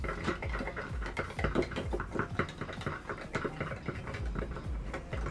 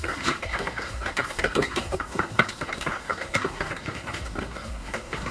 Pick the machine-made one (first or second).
second